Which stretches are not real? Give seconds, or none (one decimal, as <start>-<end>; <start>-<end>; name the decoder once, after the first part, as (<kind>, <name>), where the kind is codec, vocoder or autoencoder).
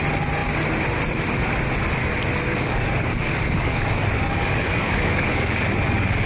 2.5-6.3 (codec, DAC)